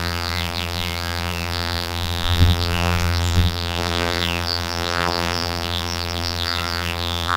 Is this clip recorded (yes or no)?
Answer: no